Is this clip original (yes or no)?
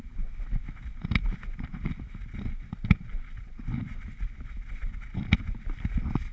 yes